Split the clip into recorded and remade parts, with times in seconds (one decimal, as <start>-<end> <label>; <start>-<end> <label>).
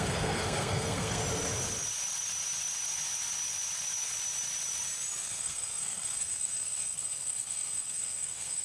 0.0-1.2 remade; 1.2-5.2 recorded; 5.2-8.6 remade